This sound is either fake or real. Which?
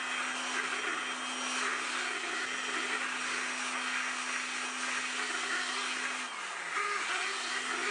real